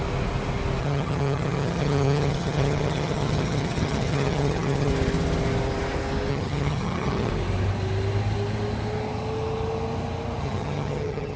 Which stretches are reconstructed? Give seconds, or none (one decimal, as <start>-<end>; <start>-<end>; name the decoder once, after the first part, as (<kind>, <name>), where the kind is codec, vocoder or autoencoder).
0.8-4.9 (vocoder, HiFi-GAN); 6.3-7.3; 10.4-11.4